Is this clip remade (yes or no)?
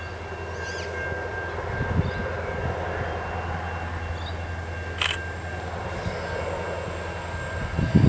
no